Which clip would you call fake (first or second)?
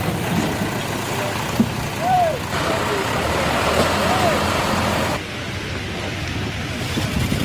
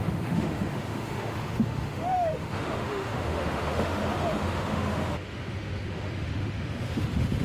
second